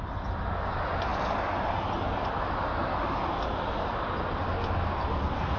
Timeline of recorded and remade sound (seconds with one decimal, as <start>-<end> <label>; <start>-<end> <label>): 0.0-5.6 recorded